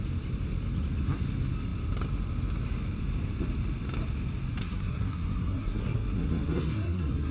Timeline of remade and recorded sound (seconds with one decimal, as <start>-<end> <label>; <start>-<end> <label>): 0.0-4.6 recorded; 4.6-7.3 remade